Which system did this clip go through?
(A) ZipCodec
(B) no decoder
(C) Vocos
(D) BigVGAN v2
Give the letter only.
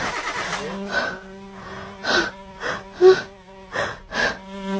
B